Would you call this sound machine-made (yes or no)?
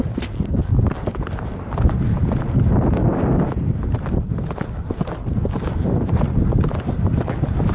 no